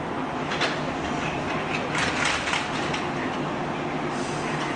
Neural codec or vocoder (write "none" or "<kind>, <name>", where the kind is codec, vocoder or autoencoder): none